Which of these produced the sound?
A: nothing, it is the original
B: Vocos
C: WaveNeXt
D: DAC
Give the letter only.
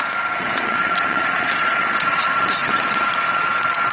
B